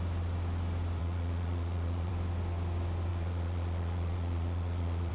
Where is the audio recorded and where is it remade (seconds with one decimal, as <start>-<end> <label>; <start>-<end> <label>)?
0.0-1.0 recorded; 1.0-2.1 remade; 2.1-3.1 recorded; 3.1-5.1 remade